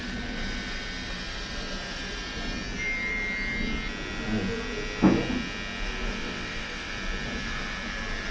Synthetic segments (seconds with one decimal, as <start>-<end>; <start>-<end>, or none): 6.2-6.9